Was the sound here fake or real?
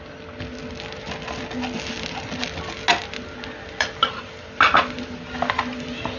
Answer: real